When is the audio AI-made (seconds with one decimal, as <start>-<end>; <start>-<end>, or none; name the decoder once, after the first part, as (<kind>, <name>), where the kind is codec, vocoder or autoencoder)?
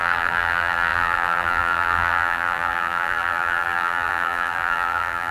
0.0-5.3 (vocoder, BigVGAN v2)